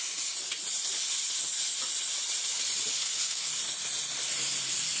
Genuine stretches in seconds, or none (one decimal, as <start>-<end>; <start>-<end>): 0.0-3.0; 3.5-5.0